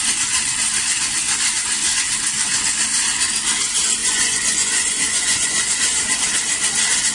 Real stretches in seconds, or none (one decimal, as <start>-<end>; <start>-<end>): 0.0-4.0; 6.2-7.1